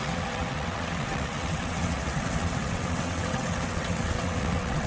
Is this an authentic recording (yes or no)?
no